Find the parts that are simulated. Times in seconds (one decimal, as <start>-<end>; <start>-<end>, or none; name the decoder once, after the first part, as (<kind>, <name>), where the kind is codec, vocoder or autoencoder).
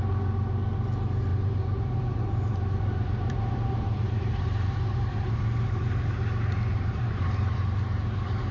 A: 1.3-6.0 (vocoder, BigVGAN v2); 6.7-8.5